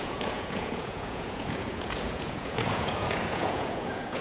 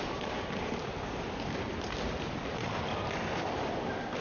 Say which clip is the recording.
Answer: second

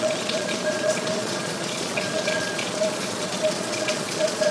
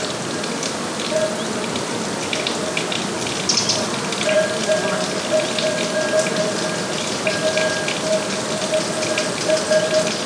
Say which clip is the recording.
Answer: second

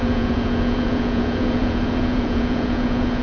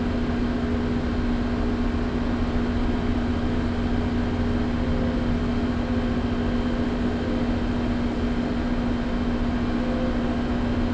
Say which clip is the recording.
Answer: second